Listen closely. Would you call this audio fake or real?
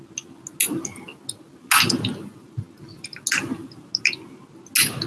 real